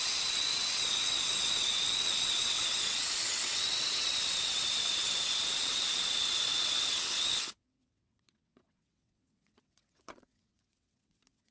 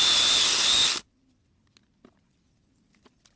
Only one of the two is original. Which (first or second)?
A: second